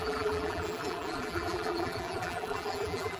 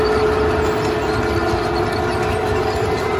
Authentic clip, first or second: second